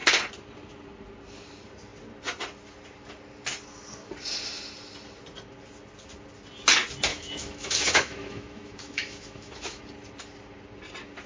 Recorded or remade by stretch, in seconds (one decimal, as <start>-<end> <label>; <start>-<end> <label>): 0.0-7.1 recorded; 7.1-9.8 remade; 9.8-11.3 recorded